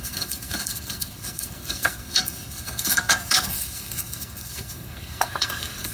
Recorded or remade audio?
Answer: remade